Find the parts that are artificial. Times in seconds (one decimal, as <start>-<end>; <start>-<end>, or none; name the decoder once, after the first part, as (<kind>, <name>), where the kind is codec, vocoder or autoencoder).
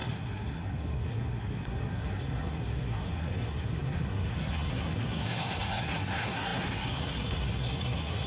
0.0-8.3 (codec, SNAC)